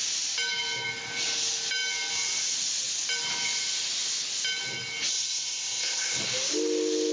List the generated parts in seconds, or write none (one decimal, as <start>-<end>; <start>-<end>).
5.1-6.2